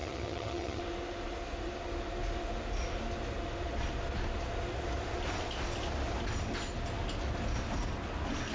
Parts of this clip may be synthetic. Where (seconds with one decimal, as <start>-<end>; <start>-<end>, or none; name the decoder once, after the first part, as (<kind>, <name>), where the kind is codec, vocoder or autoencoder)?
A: 0.0-0.8 (vocoder, HiFi-GAN)